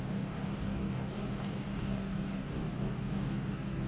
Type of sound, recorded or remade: remade